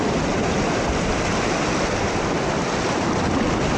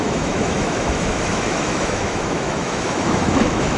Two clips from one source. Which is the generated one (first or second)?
second